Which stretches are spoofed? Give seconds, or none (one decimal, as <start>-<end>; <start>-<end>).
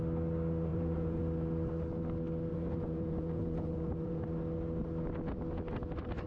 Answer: 0.7-1.2; 2.5-4.2